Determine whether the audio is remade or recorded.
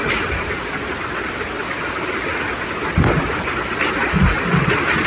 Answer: recorded